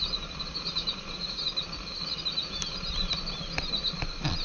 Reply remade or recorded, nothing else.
recorded